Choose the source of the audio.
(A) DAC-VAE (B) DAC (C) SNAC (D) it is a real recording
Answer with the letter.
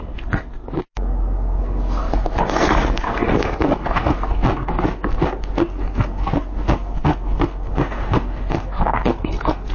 C